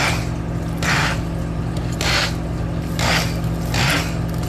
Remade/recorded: recorded